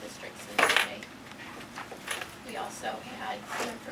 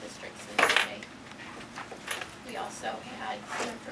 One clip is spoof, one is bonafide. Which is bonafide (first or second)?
second